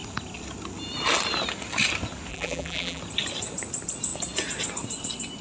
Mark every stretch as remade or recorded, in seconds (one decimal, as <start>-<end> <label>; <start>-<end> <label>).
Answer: 0.0-2.3 recorded; 2.3-3.0 remade; 3.0-5.4 recorded